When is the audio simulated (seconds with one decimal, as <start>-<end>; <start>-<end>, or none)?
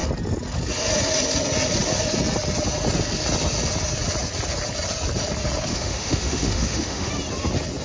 5.7-7.1